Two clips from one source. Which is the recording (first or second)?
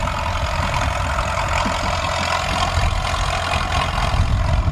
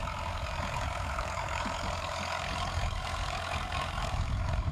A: first